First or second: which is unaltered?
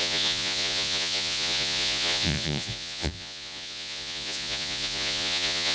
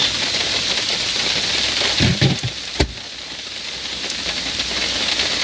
second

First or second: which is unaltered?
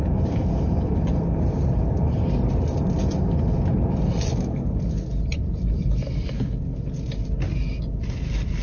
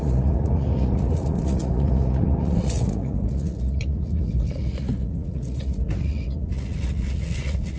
first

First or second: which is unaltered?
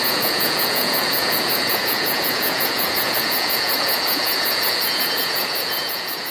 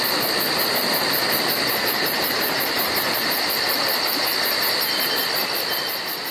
second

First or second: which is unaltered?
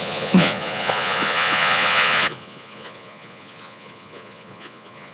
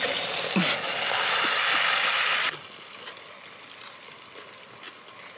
second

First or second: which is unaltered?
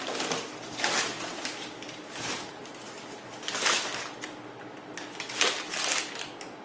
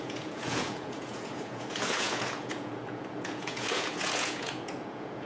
first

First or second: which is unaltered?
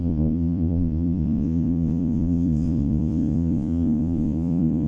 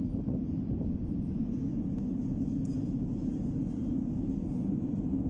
second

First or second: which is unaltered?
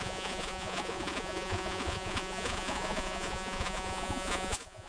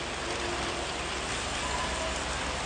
second